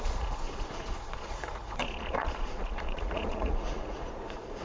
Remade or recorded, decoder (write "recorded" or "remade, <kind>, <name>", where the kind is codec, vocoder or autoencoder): remade, vocoder, Vocos